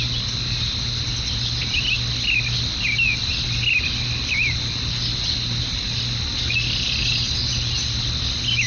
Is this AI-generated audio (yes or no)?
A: no